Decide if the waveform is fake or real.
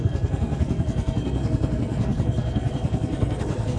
fake